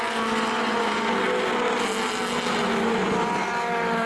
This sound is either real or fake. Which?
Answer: real